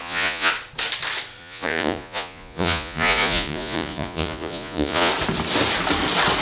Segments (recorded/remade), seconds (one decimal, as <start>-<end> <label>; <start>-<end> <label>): 0.0-0.5 remade; 0.5-1.4 recorded; 1.4-5.1 remade; 5.1-6.4 recorded